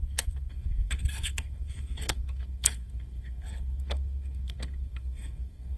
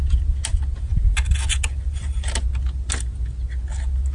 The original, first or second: second